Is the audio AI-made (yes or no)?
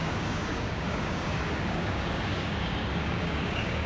yes